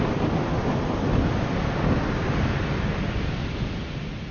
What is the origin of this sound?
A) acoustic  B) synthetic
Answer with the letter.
A